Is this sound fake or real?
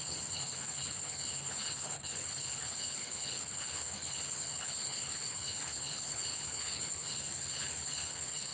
fake